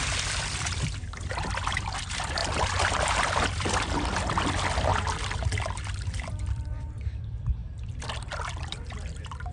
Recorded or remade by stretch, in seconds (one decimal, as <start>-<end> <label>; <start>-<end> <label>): 0.0-4.9 remade; 4.9-6.0 recorded; 6.0-9.5 remade